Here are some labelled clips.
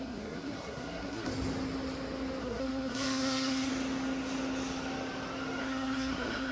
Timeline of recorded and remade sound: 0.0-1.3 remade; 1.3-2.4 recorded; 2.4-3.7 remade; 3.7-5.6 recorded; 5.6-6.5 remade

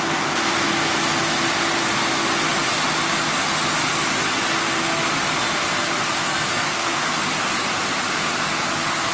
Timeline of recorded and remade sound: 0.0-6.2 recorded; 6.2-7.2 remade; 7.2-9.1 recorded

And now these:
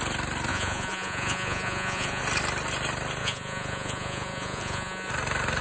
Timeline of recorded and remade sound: 0.0-0.5 recorded; 0.5-2.2 remade; 2.2-3.2 recorded; 3.2-5.1 remade; 5.1-5.6 recorded

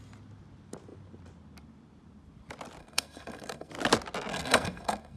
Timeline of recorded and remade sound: 0.0-2.8 recorded; 2.8-3.7 remade; 3.7-4.3 recorded; 4.3-5.2 remade

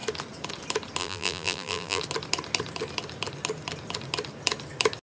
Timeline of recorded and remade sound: 0.0-1.0 recorded; 1.0-2.0 remade; 2.0-5.1 recorded